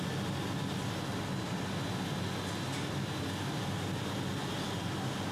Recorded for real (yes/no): yes